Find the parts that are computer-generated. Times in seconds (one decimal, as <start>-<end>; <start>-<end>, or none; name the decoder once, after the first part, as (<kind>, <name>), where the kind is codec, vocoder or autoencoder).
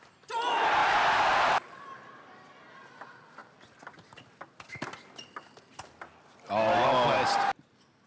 0.8-1.7 (vocoder, BigVGAN v2)